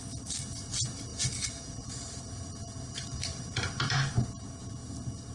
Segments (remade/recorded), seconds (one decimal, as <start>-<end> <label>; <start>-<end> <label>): 0.0-1.1 recorded; 1.1-4.3 remade; 4.3-5.3 recorded